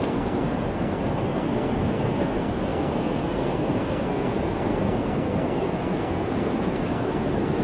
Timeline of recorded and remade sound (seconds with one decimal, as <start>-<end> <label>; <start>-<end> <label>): 0.0-7.6 remade